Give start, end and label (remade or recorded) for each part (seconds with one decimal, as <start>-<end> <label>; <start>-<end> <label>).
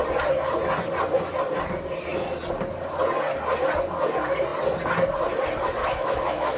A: 0.0-5.8 recorded; 5.8-6.6 remade